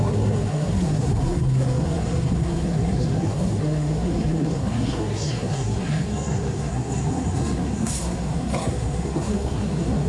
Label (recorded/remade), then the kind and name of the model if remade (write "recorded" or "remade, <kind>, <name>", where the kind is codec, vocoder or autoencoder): remade, codec, SNAC